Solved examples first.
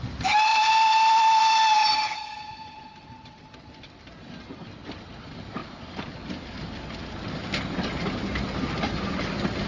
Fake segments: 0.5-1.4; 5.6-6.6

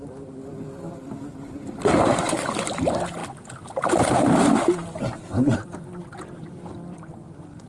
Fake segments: none

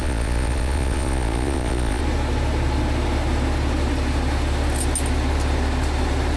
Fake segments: 0.0-2.0